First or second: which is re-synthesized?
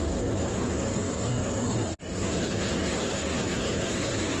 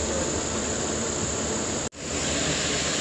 first